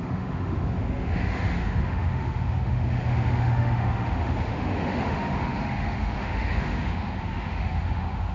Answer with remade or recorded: remade